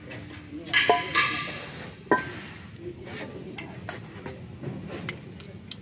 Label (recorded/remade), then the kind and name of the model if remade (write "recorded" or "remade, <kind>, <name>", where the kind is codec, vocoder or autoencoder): recorded